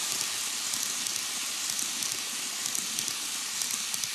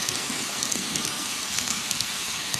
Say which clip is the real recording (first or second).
first